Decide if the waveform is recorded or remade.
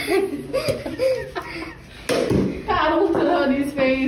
recorded